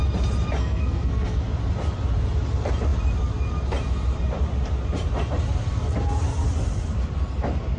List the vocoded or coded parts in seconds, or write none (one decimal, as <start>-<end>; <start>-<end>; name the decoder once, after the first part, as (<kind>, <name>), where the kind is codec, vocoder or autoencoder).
0.6-1.4 (codec, SNAC)